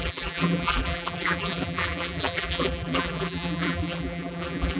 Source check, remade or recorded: remade